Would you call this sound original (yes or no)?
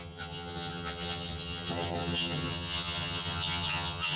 no